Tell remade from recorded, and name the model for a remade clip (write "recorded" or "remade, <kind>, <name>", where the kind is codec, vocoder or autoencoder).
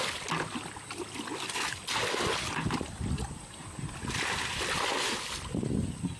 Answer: recorded